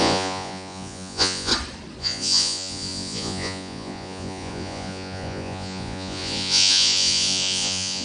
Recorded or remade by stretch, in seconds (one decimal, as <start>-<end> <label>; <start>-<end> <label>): 0.0-1.5 remade; 1.5-2.0 recorded; 2.0-8.0 remade